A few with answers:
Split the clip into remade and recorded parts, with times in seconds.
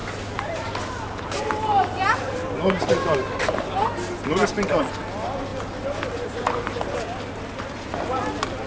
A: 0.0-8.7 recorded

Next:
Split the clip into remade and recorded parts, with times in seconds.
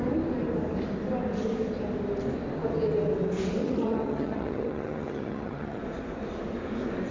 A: 0.0-3.6 recorded; 3.6-5.8 remade; 5.8-7.1 recorded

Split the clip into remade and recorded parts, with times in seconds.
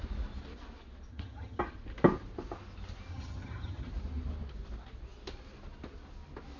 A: 0.0-1.1 recorded; 1.1-1.6 remade; 1.6-3.1 recorded; 3.1-3.9 remade; 3.9-6.6 recorded